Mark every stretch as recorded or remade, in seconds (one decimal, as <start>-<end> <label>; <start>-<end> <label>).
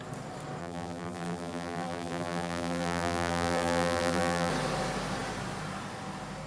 0.0-0.6 recorded; 0.6-4.5 remade; 4.5-6.5 recorded